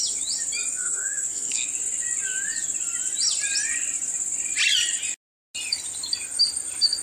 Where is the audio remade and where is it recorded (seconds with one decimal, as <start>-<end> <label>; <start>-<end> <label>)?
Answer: 0.0-0.7 recorded; 0.7-1.7 remade; 1.7-7.0 recorded